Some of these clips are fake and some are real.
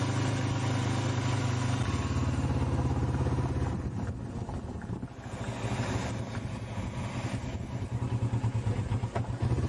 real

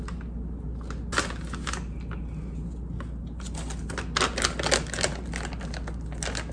real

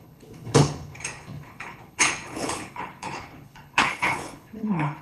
fake